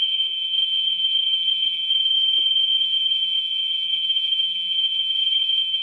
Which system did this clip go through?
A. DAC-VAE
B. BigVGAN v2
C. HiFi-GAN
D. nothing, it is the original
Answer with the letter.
B